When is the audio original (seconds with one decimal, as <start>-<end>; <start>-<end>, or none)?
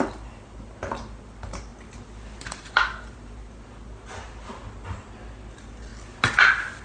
0.0-6.8